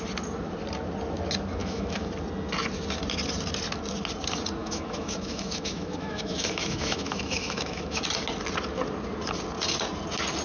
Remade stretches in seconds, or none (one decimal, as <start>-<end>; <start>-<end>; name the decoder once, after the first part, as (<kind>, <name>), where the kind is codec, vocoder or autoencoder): 1.6-2.1 (autoencoder, DAC-VAE); 4.6-8.0